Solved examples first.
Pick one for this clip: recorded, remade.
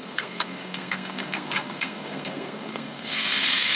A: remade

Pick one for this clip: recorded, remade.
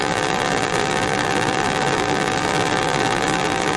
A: remade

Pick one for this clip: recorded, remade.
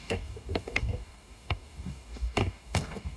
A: remade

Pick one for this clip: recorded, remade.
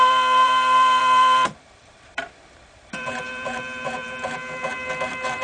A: remade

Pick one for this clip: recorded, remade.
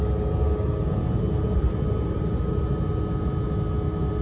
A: recorded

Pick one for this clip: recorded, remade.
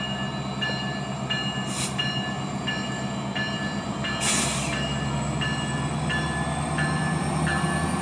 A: recorded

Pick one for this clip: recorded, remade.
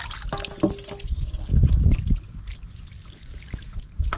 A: recorded